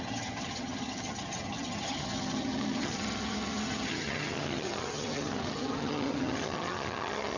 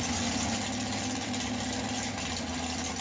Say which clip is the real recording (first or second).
second